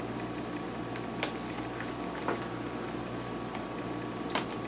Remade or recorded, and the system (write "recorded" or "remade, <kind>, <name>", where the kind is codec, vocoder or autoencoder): recorded